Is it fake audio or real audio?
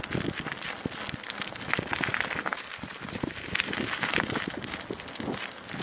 real